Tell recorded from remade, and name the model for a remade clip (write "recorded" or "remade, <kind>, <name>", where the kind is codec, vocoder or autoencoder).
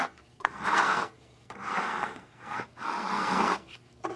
remade, codec, SNAC